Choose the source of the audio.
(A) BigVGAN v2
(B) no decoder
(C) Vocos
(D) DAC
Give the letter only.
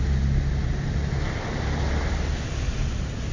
B